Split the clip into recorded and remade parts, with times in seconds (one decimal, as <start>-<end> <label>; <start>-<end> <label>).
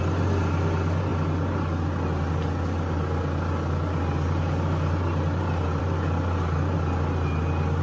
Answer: 0.0-7.8 recorded